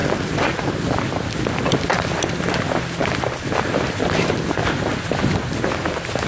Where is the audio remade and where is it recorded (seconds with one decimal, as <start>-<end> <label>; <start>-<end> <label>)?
0.0-6.3 recorded